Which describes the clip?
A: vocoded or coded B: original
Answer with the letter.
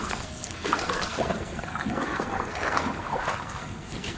A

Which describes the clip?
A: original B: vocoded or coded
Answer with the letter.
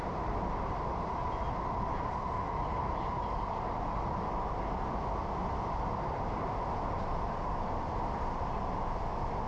A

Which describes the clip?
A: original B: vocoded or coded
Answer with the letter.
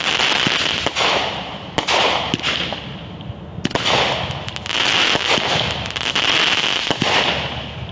A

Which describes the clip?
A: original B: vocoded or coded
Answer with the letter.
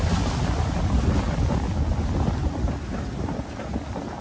A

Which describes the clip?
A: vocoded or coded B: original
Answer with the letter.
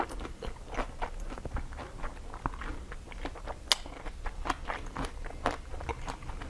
B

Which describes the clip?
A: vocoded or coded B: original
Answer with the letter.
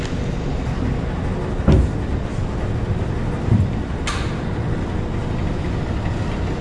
B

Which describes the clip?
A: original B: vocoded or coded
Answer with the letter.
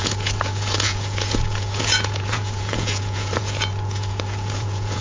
B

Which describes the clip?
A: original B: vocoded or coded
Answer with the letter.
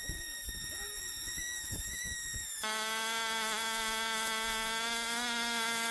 B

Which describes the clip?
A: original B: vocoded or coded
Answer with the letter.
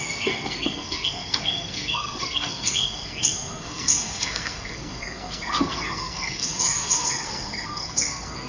B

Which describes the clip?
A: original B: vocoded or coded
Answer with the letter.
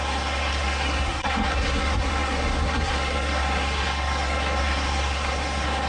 B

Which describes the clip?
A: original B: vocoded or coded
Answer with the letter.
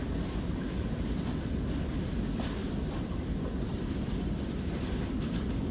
A